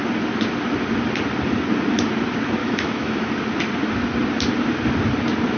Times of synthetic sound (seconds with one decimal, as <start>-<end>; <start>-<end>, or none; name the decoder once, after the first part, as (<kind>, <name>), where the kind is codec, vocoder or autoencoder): 2.6-3.3 (autoencoder, DAC-VAE)